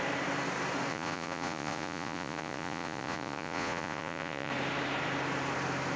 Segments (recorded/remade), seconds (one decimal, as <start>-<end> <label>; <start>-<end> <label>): 0.0-0.9 recorded; 0.9-4.5 remade; 4.5-6.0 recorded